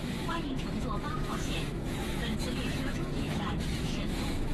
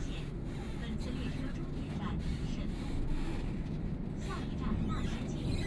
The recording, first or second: second